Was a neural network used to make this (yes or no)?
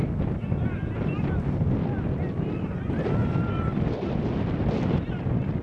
no